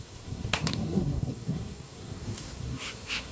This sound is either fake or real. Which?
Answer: fake